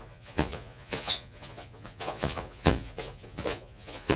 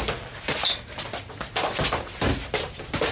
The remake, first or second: first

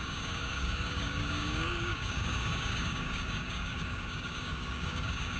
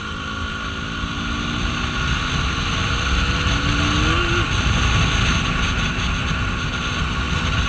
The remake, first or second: first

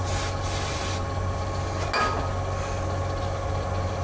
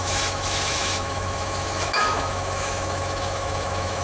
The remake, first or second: second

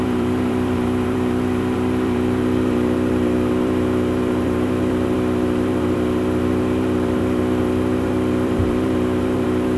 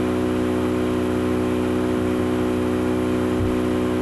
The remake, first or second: first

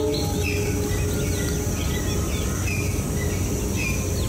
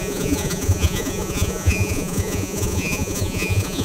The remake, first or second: second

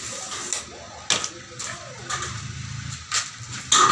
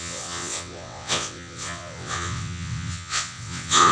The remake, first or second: second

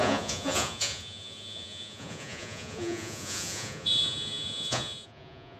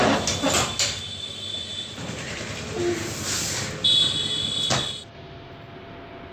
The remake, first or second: first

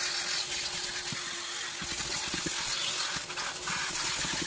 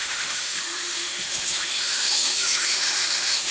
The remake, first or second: second